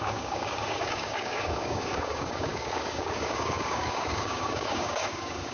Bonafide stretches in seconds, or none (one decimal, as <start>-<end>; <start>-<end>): none